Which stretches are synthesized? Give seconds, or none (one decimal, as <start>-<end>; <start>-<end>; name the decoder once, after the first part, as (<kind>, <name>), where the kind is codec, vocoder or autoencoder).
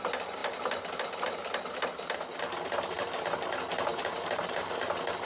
3.7-4.8 (vocoder, BigVGAN v2)